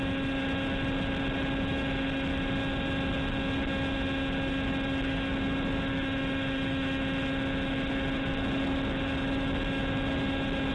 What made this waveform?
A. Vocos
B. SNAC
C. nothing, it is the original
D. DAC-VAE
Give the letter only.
C